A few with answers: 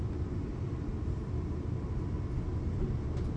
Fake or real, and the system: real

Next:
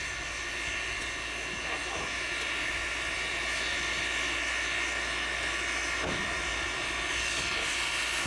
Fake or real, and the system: real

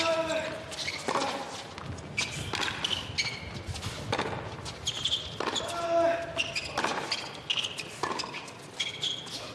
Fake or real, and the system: real